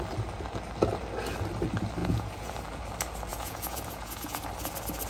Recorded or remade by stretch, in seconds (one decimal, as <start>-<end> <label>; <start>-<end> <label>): 0.0-2.0 recorded; 2.0-2.5 remade; 2.5-3.3 recorded; 3.3-4.5 remade; 4.5-5.1 recorded